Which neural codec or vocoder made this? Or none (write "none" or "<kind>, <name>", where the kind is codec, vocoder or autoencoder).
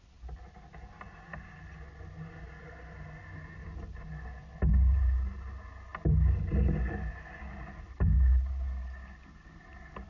none